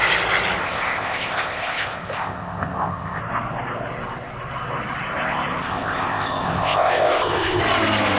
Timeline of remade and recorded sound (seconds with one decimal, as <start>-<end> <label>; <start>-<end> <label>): 0.0-0.6 recorded; 0.6-3.2 remade; 3.2-5.6 recorded; 5.6-7.6 remade; 7.6-8.2 recorded